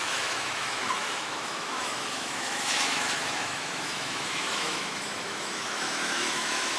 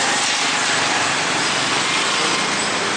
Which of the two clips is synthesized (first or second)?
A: first